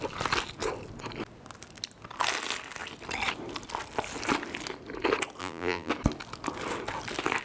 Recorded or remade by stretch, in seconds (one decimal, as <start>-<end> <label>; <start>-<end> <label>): 0.0-5.4 recorded; 5.4-5.9 remade; 5.9-7.4 recorded